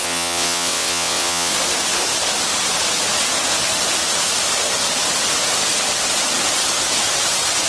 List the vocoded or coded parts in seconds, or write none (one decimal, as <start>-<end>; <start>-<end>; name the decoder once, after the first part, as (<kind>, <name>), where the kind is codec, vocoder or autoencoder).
0.0-1.5 (vocoder, WaveNeXt)